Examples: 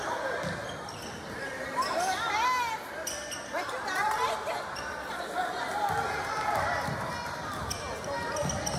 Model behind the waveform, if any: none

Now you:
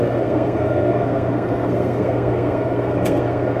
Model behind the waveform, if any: codec, SNAC